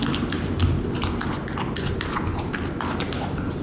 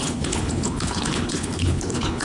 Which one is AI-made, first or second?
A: second